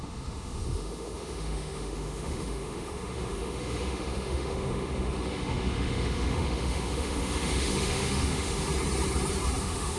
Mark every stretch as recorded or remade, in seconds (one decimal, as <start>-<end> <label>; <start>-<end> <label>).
0.0-8.7 remade; 8.7-9.6 recorded; 9.6-10.0 remade